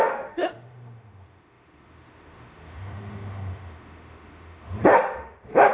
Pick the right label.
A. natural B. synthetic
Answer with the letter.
B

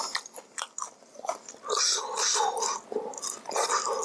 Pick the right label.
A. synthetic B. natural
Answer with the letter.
B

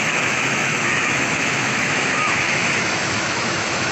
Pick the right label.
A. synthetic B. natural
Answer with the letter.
A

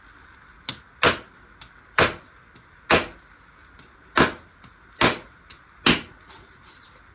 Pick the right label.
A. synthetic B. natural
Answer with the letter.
B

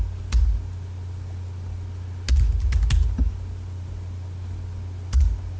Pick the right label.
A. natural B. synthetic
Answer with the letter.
A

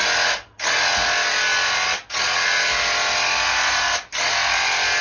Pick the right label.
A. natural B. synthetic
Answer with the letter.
A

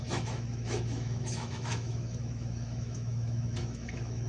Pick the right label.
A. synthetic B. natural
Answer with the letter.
A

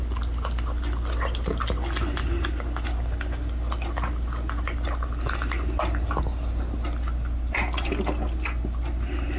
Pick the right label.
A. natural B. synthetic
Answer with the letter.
A